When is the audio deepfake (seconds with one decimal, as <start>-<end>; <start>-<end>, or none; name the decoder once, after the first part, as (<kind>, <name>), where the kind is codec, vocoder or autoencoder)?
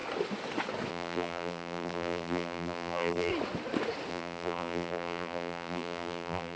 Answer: 0.9-3.3 (vocoder, BigVGAN v2); 4.1-6.6